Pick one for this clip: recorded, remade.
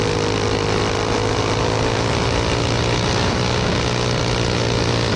recorded